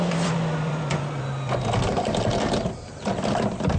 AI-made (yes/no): yes